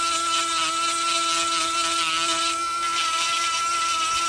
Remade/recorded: recorded